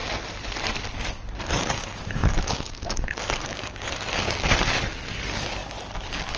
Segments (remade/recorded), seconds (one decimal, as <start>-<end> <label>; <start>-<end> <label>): 0.0-1.1 recorded; 1.1-6.4 remade